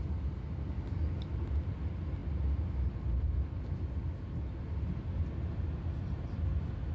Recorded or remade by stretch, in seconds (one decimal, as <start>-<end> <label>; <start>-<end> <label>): 0.0-6.9 recorded